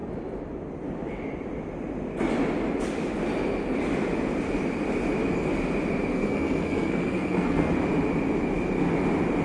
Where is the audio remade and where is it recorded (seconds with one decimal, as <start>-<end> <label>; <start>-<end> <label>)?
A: 0.0-6.1 recorded; 6.1-7.7 remade; 7.7-9.4 recorded